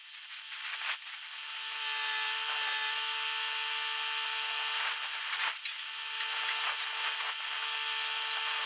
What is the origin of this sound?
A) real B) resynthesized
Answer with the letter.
A